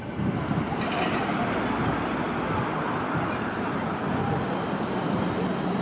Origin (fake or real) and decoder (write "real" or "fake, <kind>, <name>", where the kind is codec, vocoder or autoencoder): real